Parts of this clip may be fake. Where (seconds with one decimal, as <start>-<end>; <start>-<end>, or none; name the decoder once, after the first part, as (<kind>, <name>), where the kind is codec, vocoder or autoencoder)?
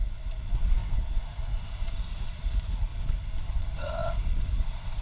0.0-2.9 (vocoder, Vocos); 3.5-5.0